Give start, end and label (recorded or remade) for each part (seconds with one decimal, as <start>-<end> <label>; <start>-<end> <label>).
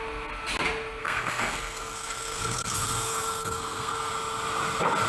0.0-1.0 recorded; 1.0-4.1 remade; 4.1-5.1 recorded